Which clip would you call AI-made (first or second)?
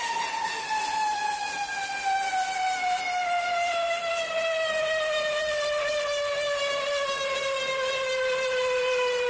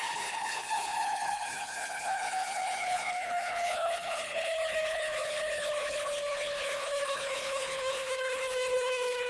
second